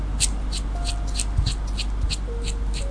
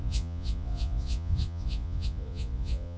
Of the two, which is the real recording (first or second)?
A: first